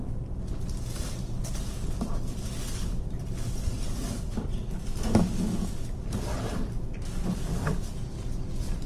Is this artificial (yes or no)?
yes